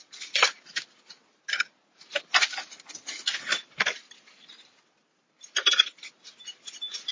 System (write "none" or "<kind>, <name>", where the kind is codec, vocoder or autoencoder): none